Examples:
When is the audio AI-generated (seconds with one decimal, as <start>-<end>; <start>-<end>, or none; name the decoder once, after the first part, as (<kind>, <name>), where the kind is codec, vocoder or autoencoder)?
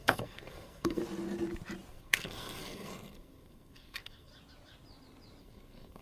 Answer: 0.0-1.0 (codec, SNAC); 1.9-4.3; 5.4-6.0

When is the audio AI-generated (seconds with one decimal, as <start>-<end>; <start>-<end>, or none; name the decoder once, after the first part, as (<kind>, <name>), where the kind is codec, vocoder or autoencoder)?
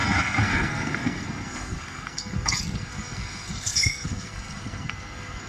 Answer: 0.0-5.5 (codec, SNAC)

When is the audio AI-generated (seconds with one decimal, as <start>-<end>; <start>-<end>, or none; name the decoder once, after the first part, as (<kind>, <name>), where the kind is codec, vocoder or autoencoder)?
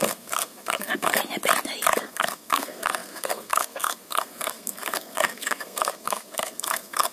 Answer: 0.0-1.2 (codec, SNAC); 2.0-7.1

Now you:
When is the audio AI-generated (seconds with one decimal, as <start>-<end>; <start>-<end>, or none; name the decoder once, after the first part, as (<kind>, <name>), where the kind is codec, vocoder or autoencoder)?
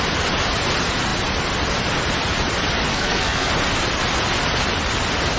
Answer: 2.9-3.5 (codec, SNAC)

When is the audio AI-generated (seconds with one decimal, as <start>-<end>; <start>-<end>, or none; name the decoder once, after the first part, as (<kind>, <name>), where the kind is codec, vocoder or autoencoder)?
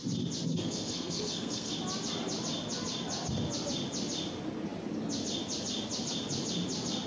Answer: 0.5-1.7 (codec, SNAC)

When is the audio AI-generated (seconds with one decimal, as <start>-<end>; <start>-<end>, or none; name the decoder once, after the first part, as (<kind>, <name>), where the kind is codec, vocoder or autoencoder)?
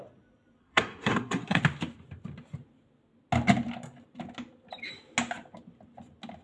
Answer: 0.6-1.6 (codec, SNAC)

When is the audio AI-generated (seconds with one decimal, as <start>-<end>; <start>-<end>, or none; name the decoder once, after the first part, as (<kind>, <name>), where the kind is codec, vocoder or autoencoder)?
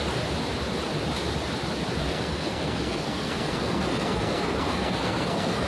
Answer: 2.0-5.7 (codec, SNAC)